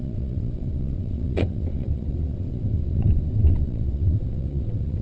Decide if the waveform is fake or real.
fake